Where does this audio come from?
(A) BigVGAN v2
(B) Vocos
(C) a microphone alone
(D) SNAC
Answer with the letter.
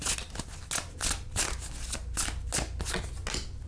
C